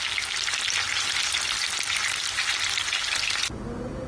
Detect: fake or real real